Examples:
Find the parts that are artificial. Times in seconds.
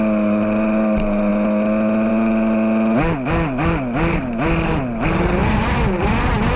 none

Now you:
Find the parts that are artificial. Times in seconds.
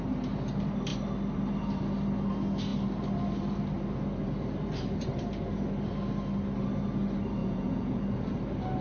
7.4-8.0 (vocoder, Vocos)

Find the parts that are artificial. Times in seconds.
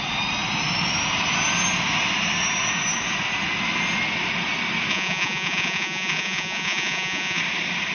4.9-7.4 (vocoder, Vocos)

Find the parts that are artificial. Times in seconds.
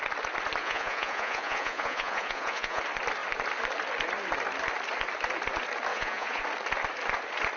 0.6-2.8 (vocoder, Vocos); 5.9-6.4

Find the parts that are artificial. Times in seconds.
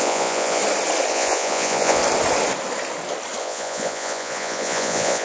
0.0-0.6 (vocoder, Vocos); 1.1-2.0; 3.4-5.2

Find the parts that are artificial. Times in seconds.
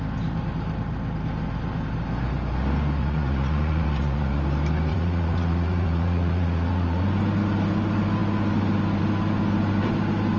3.0-4.4 (vocoder, Vocos); 4.9-7.0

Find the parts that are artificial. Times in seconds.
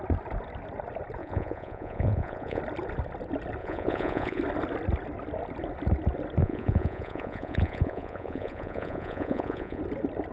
1.2-2.6 (vocoder, Vocos); 3.6-4.4; 6.4-9.8